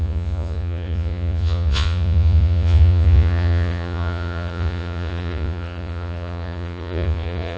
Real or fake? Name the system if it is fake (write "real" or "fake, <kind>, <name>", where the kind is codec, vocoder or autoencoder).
fake, vocoder, Vocos